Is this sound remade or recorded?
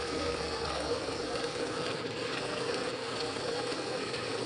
remade